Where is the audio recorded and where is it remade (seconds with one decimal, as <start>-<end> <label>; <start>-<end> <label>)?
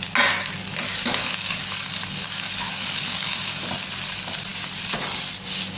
0.0-1.2 recorded; 1.2-3.6 remade; 3.6-5.8 recorded